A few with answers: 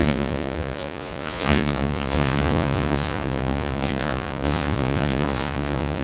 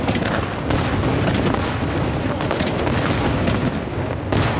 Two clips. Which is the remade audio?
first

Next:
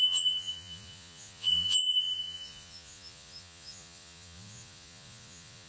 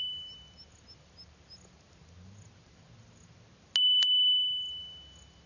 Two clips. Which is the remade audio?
first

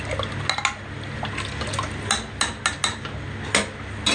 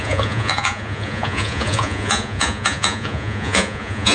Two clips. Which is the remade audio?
second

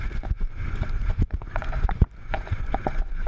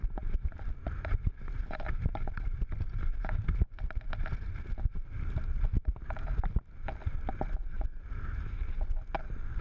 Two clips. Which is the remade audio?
first